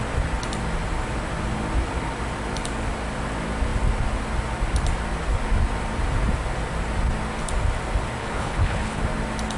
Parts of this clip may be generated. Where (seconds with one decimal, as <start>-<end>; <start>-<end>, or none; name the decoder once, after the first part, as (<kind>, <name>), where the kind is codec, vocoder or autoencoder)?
8.2-9.0 (codec, HILCodec)